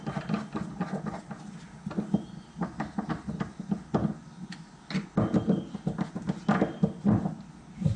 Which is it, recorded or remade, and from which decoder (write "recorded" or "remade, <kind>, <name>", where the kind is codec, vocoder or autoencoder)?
recorded